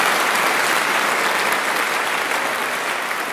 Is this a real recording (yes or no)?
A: yes